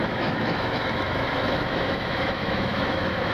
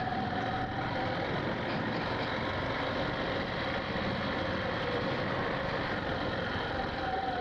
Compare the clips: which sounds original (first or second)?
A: second